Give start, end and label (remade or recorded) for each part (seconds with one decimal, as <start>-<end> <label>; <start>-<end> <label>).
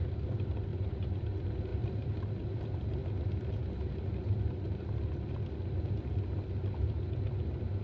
0.0-0.7 recorded; 0.7-1.2 remade; 1.2-7.8 recorded